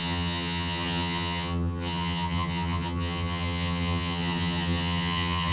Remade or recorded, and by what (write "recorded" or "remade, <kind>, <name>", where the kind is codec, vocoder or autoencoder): remade, vocoder, HiFi-GAN